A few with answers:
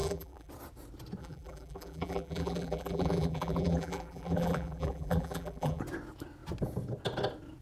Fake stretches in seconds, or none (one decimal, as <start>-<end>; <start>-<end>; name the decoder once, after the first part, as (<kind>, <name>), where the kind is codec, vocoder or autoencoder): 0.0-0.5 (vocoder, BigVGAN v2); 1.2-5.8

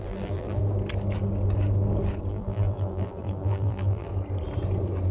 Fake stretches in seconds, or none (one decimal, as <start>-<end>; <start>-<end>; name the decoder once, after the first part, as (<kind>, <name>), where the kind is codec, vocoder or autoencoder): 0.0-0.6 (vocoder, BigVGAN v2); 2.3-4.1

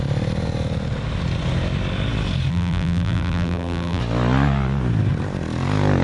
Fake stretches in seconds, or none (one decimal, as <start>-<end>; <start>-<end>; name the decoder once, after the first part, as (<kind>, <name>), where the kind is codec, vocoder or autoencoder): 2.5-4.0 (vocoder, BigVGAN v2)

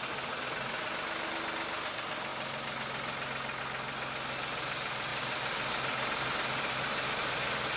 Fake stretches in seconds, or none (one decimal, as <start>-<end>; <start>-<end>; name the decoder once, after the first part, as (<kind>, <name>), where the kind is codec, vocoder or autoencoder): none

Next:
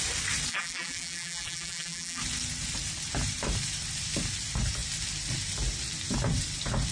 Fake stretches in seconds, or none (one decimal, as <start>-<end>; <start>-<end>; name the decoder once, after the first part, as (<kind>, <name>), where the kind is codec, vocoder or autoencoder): 0.5-2.2 (vocoder, BigVGAN v2)

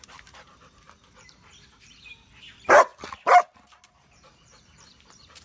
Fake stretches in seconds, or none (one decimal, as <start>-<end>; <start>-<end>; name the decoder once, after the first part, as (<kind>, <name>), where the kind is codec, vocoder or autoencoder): 0.0-2.9 (vocoder, BigVGAN v2); 3.9-5.4

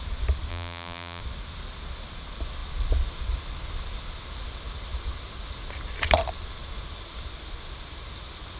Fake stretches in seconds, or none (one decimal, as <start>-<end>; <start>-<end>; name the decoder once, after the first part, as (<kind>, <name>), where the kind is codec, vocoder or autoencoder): 0.5-1.2 (vocoder, BigVGAN v2)

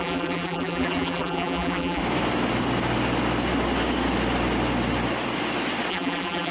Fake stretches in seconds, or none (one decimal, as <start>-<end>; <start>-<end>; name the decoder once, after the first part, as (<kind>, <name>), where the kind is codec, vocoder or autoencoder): 0.0-2.0 (vocoder, BigVGAN v2); 5.9-6.5